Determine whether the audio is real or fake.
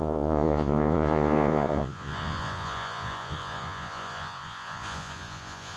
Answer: fake